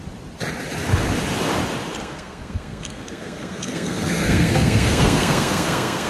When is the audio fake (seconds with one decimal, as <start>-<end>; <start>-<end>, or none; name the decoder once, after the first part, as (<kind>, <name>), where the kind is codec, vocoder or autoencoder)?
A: 2.0-6.1 (codec, SNAC)